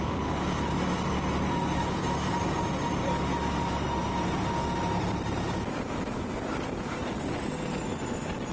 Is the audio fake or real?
real